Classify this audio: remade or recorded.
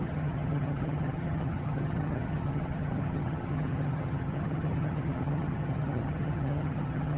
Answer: remade